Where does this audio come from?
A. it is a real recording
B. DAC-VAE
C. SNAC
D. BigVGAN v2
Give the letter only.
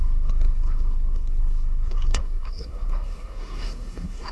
C